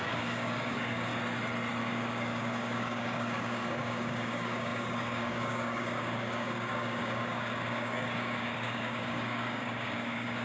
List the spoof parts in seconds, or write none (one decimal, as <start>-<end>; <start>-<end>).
0.0-1.1; 1.8-10.4